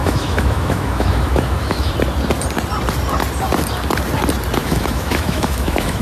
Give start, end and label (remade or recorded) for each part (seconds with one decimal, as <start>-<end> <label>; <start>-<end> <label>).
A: 0.0-1.9 remade; 1.9-4.6 recorded; 4.6-6.0 remade